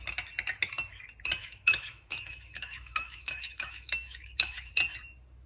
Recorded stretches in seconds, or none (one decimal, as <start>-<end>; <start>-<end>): 0.0-1.4; 4.7-5.5